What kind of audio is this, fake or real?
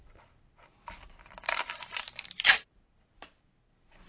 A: real